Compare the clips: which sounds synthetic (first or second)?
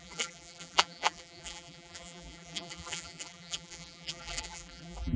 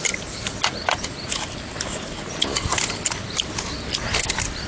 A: first